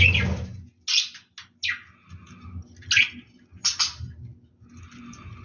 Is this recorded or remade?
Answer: recorded